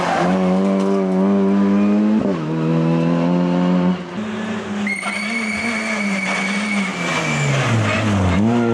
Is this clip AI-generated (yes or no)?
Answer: no